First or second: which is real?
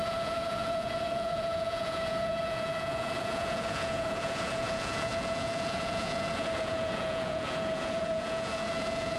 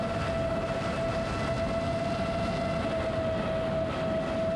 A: second